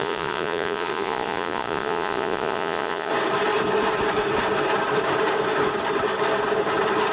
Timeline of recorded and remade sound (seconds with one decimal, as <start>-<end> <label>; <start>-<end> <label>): 0.0-3.1 remade; 3.1-7.1 recorded